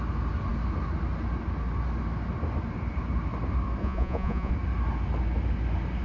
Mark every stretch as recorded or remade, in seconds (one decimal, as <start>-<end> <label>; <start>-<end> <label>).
0.0-3.8 recorded; 3.8-4.5 remade; 4.5-6.0 recorded